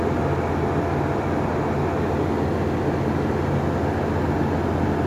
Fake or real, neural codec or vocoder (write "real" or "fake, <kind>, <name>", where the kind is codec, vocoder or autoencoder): real